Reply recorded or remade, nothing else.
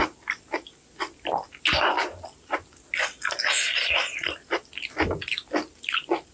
recorded